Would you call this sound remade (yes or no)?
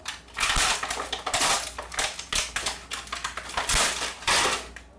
no